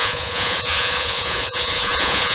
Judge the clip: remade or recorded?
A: remade